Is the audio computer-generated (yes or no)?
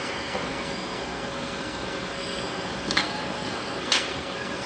yes